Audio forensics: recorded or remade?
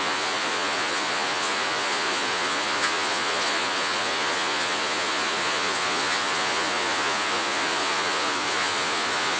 remade